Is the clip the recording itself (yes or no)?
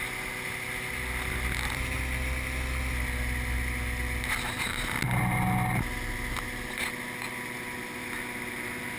yes